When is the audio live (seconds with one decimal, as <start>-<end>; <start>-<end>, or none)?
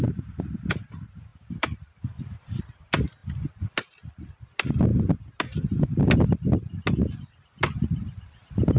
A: 0.0-8.8